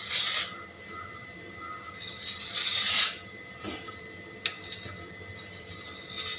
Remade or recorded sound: recorded